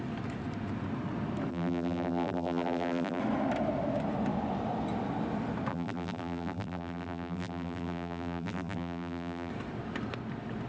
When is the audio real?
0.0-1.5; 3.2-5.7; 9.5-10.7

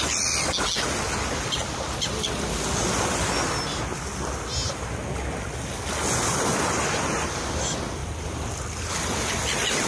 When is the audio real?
0.0-9.9

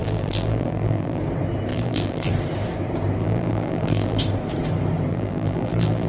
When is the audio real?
1.2-1.7; 2.3-3.2; 4.2-5.1

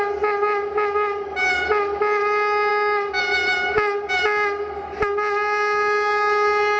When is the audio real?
0.0-6.8

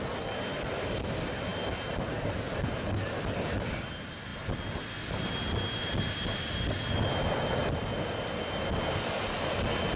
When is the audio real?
0.0-10.0